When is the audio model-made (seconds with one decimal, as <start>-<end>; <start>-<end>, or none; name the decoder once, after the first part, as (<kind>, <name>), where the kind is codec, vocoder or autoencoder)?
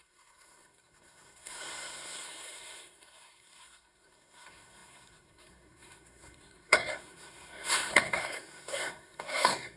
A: 0.0-9.8 (codec, SNAC)